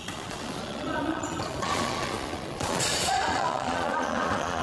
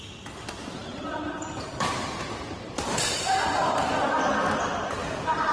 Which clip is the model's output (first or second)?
first